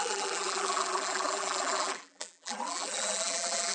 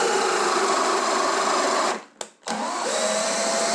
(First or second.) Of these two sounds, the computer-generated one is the first